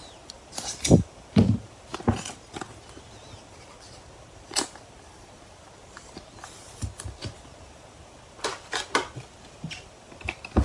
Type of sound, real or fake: fake